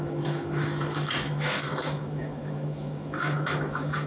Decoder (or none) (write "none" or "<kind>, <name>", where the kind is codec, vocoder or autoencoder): autoencoder, DAC-VAE